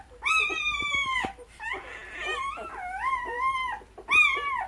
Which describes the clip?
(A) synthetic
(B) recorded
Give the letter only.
B